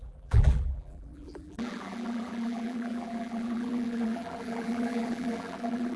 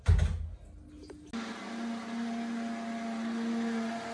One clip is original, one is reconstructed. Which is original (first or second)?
second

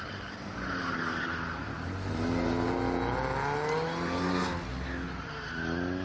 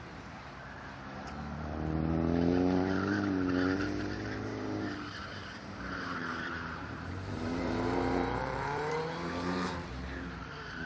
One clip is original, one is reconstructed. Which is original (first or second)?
first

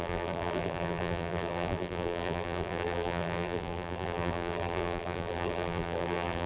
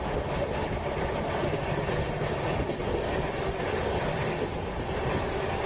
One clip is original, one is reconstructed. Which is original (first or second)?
second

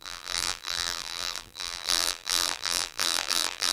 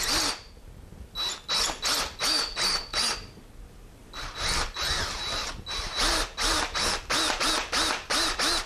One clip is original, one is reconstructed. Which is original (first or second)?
second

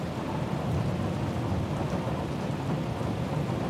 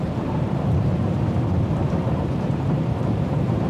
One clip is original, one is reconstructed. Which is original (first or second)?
first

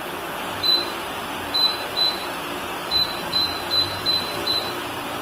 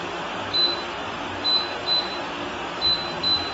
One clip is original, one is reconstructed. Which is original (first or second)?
second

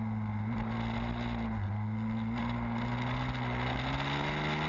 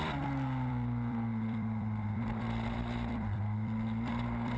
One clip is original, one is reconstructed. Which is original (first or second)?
first